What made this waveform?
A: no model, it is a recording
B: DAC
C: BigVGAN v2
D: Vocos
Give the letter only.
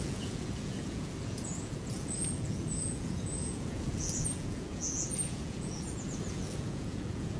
D